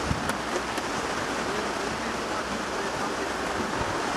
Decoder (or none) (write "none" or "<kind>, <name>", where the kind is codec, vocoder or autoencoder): none